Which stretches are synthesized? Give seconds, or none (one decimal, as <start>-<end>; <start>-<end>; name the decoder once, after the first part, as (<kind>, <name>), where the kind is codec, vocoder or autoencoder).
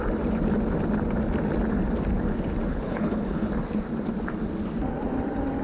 2.7-3.5 (codec, HILCodec)